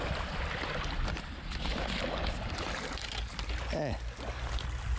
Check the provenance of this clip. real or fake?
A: real